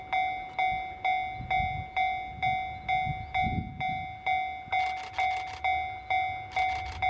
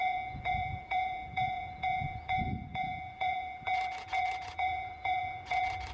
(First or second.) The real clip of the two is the first